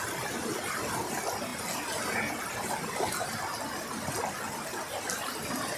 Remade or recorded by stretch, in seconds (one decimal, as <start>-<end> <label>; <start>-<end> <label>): 0.0-5.8 recorded